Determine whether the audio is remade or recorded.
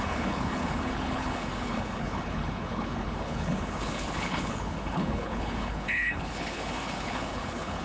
remade